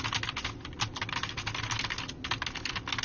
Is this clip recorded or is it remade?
recorded